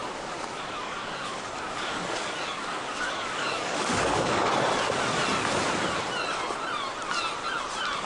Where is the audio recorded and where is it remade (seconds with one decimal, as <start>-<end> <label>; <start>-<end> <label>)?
0.0-4.5 remade; 4.5-8.1 recorded